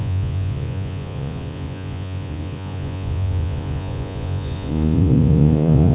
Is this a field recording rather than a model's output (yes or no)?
no